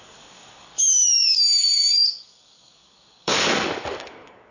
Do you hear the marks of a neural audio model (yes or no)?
yes